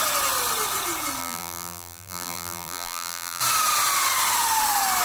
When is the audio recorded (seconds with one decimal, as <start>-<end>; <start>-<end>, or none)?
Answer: 0.0-1.2; 3.4-5.0